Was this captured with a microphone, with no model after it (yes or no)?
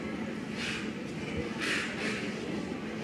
yes